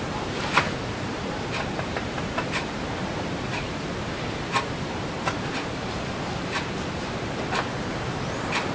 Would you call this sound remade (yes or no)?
yes